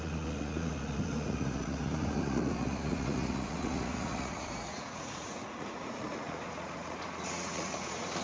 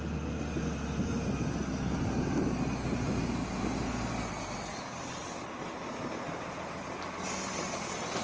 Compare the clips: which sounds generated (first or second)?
first